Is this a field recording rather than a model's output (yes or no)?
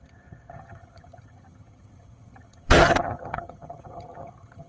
no